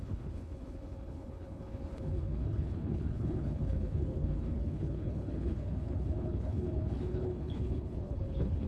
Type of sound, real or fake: fake